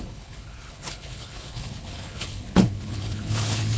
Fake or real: fake